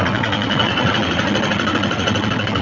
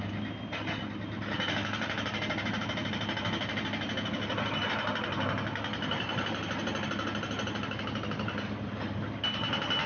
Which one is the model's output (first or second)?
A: first